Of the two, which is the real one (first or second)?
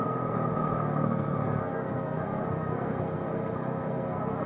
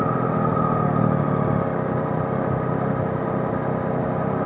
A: second